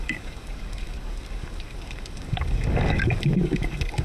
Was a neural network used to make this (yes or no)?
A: yes